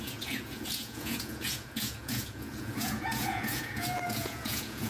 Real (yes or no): no